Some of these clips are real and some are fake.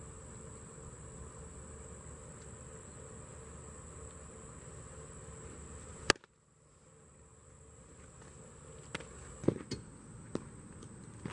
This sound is real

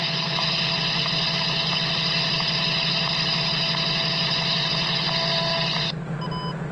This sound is real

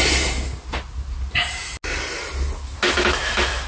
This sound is real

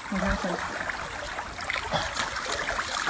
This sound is real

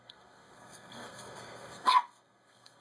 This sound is fake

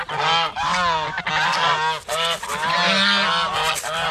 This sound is real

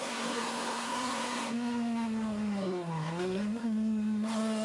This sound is fake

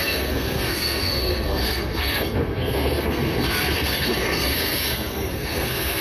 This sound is fake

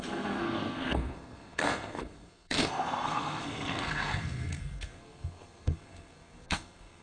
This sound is fake